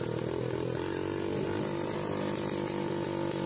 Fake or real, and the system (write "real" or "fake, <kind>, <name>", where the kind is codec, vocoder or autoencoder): real